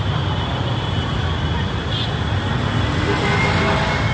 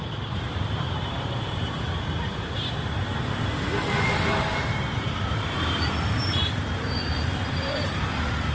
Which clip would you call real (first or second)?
first